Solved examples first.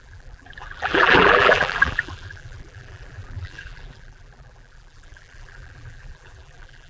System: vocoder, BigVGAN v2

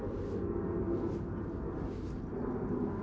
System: none